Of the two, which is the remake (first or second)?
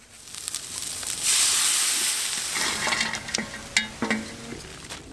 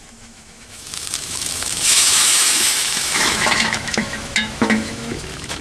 second